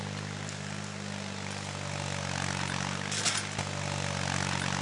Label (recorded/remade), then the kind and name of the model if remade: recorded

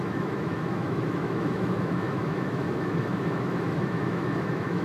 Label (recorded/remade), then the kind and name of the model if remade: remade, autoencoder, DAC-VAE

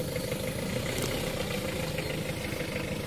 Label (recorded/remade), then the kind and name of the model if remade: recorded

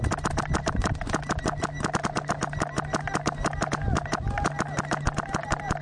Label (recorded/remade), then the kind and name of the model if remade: recorded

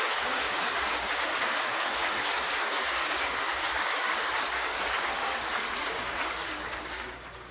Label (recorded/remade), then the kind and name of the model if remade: remade, codec, DAC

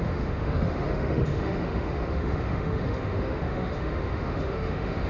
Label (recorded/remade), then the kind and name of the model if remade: remade, autoencoder, DAC-VAE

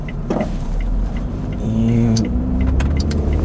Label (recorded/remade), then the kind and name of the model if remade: remade, vocoder, BigVGAN v2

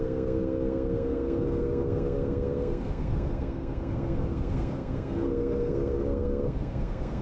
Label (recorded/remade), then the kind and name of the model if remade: remade, codec, SNAC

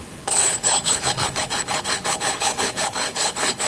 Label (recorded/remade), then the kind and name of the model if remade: remade, codec, HILCodec